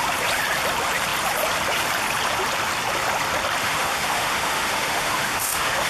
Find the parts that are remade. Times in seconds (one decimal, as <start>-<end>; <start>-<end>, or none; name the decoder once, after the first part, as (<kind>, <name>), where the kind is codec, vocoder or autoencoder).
3.6-5.9 (autoencoder, DAC-VAE)

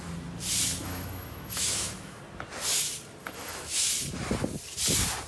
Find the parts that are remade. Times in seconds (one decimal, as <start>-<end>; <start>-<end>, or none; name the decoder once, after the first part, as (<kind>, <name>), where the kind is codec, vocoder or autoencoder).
0.8-2.2 (autoencoder, DAC-VAE); 3.2-3.9